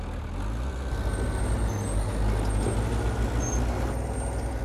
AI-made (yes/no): no